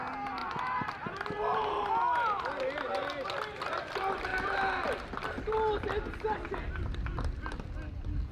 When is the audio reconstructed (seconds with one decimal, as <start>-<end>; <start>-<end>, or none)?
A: none